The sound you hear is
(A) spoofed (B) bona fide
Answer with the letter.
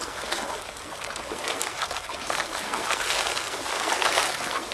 A